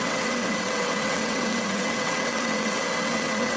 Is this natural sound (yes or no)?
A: no